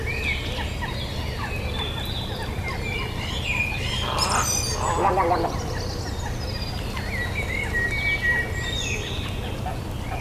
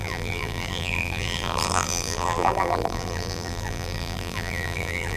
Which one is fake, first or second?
second